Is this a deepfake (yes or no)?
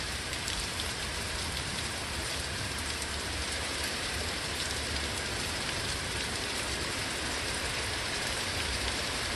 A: yes